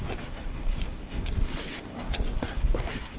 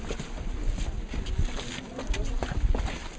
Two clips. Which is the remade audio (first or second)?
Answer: first